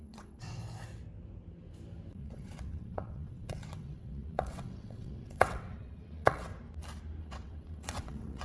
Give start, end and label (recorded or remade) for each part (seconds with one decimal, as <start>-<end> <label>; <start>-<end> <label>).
0.0-0.6 remade; 0.6-2.1 recorded; 2.1-6.5 remade; 6.5-7.2 recorded; 7.2-8.4 remade